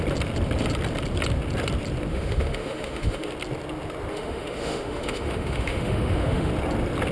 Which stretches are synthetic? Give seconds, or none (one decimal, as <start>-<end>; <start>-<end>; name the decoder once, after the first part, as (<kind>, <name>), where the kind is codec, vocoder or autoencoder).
2.1-3.3 (autoencoder, DAC-VAE); 4.1-6.5